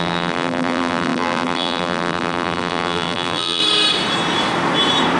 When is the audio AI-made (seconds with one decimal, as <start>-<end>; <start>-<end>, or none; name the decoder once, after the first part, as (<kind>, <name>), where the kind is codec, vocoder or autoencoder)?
0.0-3.6 (vocoder, BigVGAN v2)